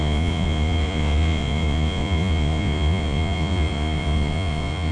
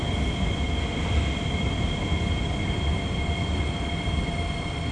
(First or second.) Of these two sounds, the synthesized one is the first